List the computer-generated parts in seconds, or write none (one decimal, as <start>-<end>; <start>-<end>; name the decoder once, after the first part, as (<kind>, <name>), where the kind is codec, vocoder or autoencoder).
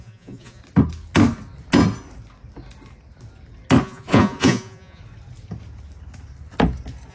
0.0-0.6 (vocoder, Vocos); 3.8-5.0